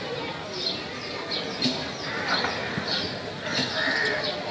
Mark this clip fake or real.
real